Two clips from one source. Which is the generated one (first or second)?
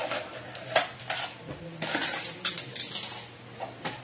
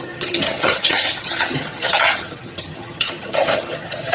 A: second